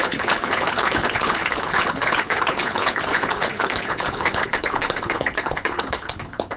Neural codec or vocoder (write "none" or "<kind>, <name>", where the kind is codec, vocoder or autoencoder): codec, HILCodec